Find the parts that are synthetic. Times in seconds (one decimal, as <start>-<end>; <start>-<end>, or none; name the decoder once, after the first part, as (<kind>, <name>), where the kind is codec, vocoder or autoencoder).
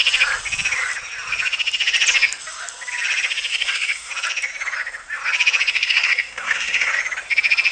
3.5-4.1 (codec, SNAC); 5.7-6.9